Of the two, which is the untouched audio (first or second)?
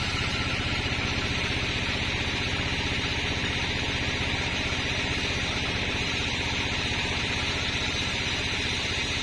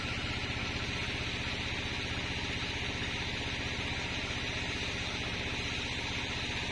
second